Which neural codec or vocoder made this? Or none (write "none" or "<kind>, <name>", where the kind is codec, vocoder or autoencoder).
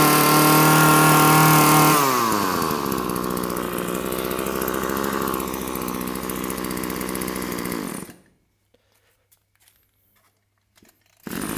none